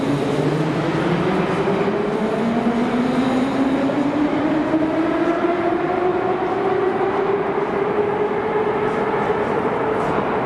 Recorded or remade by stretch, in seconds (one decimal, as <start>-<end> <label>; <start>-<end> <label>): 0.0-10.5 recorded